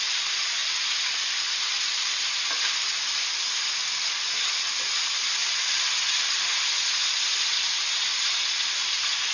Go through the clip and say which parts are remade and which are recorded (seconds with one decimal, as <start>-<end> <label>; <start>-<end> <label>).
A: 0.0-9.3 recorded